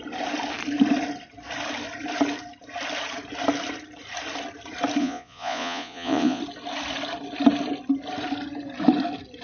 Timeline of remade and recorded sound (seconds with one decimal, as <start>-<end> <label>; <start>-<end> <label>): 0.0-5.0 recorded; 5.0-6.4 remade; 6.4-9.4 recorded